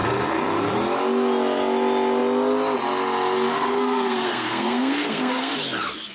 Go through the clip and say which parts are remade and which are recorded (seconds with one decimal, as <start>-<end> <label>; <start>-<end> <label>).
0.0-3.5 recorded; 3.5-5.5 remade; 5.5-6.1 recorded